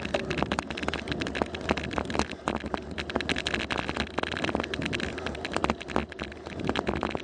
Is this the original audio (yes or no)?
yes